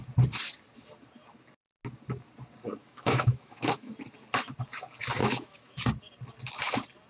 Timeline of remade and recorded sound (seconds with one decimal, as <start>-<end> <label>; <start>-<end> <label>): 0.0-2.8 recorded; 2.8-3.9 remade; 3.9-5.2 recorded; 5.2-5.8 remade; 5.8-7.1 recorded

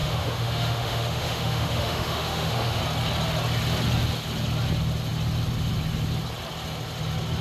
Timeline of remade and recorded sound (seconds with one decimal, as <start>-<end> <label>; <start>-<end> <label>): 0.0-2.8 remade; 2.8-7.4 recorded

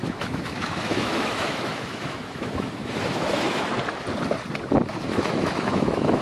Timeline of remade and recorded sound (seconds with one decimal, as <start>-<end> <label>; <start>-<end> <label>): 0.0-3.7 remade; 3.7-5.1 recorded; 5.1-6.2 remade